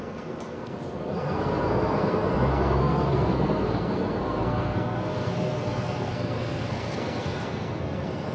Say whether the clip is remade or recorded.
remade